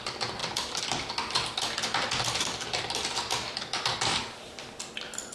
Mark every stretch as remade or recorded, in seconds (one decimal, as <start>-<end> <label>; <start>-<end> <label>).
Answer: 0.0-5.3 recorded